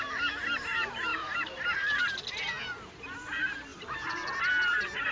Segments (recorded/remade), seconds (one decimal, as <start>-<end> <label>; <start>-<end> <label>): 0.0-1.1 recorded; 1.1-3.0 remade; 3.0-3.7 recorded; 3.7-5.1 remade